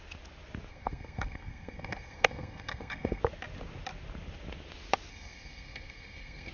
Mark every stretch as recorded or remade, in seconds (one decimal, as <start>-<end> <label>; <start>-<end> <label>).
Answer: 0.0-0.7 recorded; 0.7-3.2 remade; 3.2-5.1 recorded; 5.1-6.5 remade